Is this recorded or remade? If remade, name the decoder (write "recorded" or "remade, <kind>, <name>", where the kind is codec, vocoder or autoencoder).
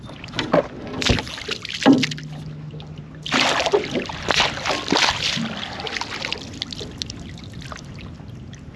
recorded